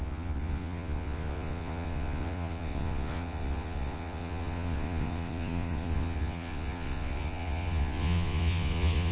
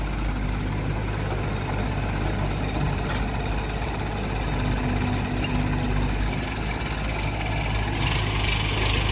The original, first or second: second